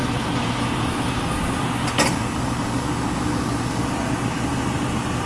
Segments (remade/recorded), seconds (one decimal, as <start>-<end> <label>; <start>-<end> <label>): 0.0-2.1 recorded; 2.1-3.8 remade; 3.8-5.3 recorded